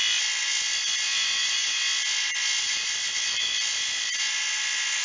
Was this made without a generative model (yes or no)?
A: yes